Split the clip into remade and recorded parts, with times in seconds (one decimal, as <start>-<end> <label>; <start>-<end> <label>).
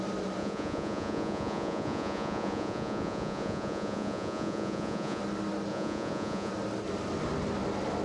0.0-0.4 recorded; 0.4-5.2 remade; 5.2-5.7 recorded; 5.7-6.5 remade; 6.5-8.0 recorded